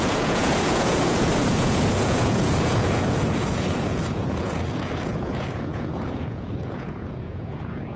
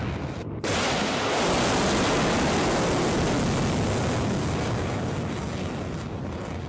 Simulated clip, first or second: first